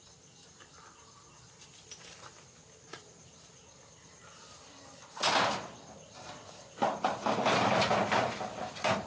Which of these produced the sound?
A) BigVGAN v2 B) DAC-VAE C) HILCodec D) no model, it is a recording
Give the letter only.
D